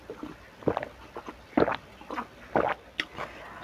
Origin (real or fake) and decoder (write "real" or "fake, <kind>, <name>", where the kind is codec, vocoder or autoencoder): real